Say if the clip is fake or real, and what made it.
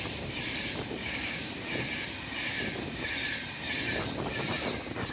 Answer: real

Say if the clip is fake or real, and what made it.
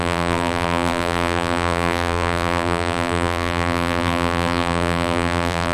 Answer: fake, vocoder, BigVGAN v2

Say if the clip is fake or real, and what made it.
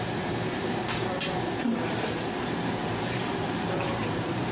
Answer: fake, vocoder, BigVGAN v2